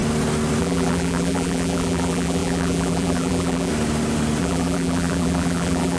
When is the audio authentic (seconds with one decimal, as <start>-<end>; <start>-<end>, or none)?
0.0-0.6; 3.7-4.4